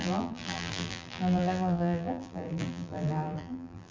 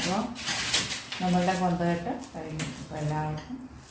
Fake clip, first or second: first